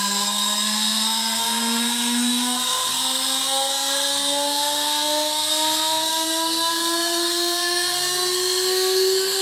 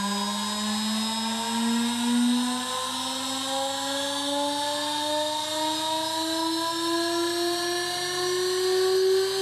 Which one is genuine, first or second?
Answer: second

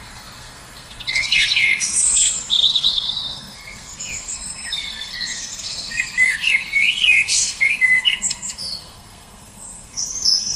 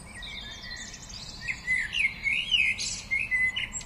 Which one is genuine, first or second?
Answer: second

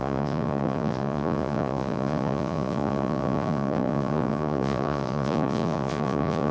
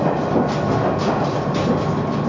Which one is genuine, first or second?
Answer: second